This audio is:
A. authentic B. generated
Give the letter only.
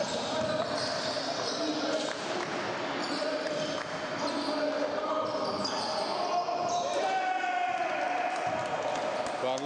A